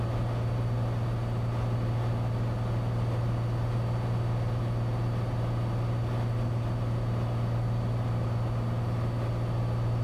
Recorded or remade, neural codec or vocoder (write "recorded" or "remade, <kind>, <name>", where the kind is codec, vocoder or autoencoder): recorded